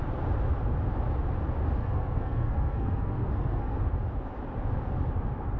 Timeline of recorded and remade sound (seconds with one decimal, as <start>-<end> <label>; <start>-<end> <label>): 0.0-1.8 recorded; 1.8-3.8 remade; 3.8-5.6 recorded